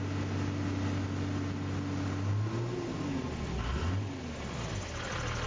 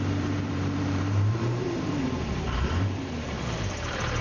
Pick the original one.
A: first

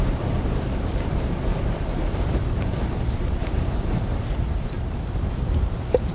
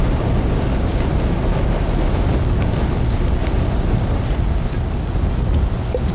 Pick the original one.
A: second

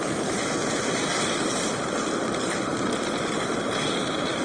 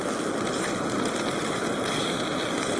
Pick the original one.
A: second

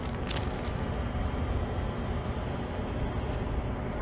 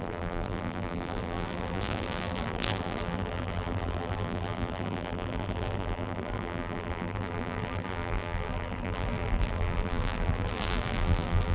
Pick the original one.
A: first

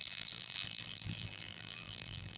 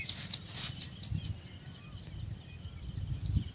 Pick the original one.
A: second